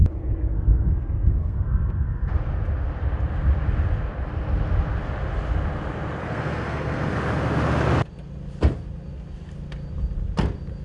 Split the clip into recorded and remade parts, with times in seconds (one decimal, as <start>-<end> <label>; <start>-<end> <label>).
0.0-0.5 recorded; 0.5-2.3 remade; 2.3-6.2 recorded; 6.2-7.1 remade; 7.1-10.8 recorded